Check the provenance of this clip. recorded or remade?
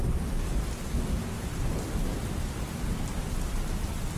recorded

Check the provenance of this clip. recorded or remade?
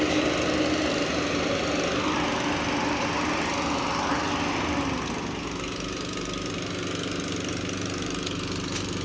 recorded